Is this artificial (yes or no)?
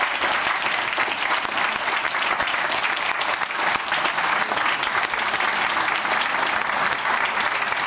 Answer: no